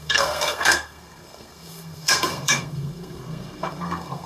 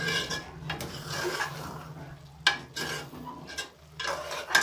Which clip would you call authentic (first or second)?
second